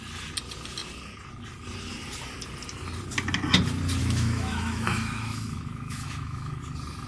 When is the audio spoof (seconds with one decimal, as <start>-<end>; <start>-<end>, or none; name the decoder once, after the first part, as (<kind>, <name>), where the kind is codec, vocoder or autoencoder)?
4.0-6.6 (autoencoder, DAC-VAE)